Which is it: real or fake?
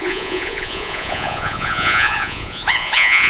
fake